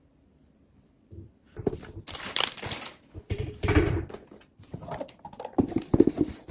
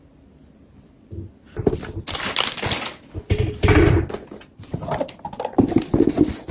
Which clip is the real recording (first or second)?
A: second